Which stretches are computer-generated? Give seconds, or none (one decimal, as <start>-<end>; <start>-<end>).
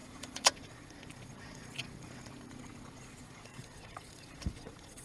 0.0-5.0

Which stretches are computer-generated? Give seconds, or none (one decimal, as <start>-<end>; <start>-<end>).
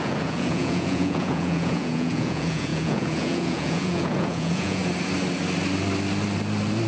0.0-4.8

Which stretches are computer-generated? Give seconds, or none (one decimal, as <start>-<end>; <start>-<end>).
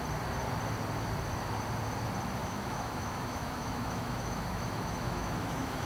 2.4-5.9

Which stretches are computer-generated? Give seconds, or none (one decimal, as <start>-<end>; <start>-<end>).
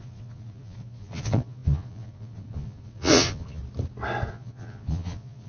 0.0-3.6; 4.3-5.5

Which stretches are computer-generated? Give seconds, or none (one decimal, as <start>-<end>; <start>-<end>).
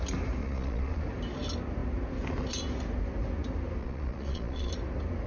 0.4-1.0; 3.8-4.7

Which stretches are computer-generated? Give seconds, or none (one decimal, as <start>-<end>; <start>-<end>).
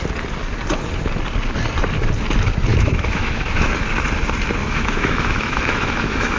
2.7-3.7; 4.6-6.4